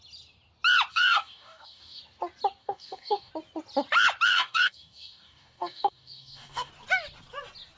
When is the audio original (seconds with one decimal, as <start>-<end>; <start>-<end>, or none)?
0.0-0.9; 2.0-2.6; 3.3-4.3; 6.7-7.8